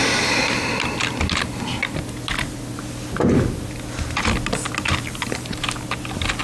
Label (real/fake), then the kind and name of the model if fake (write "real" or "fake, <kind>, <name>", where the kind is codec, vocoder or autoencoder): real